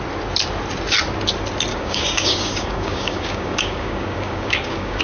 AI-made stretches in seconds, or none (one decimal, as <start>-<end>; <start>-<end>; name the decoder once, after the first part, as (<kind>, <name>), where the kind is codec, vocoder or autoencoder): 1.7-5.0 (codec, DAC)